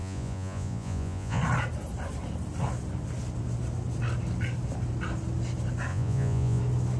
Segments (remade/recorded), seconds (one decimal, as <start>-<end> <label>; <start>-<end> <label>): 0.0-1.4 remade; 1.4-5.9 recorded; 5.9-6.6 remade; 6.6-7.0 recorded